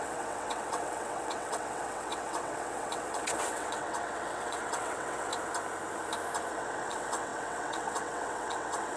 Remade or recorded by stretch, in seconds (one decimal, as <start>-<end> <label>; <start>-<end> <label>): 0.0-5.3 remade; 5.3-6.5 recorded; 6.5-9.0 remade